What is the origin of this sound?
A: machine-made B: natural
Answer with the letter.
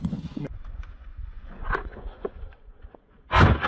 A